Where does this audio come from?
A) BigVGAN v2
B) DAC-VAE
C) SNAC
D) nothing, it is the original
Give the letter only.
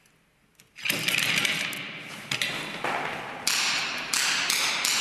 D